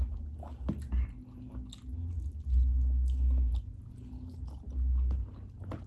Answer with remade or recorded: recorded